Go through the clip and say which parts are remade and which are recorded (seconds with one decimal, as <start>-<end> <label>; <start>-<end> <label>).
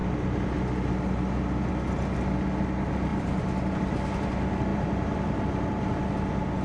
0.0-3.1 recorded; 3.1-3.7 remade; 3.7-4.7 recorded; 4.7-5.4 remade; 5.4-6.6 recorded